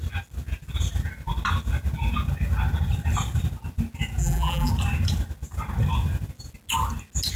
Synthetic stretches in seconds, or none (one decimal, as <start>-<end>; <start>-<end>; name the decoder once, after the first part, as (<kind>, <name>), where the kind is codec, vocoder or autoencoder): 4.2-4.7 (vocoder, BigVGAN v2)